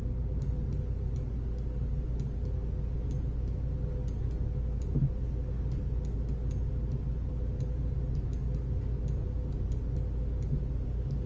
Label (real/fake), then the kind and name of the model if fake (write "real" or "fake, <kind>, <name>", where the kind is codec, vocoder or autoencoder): real